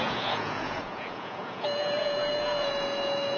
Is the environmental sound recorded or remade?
remade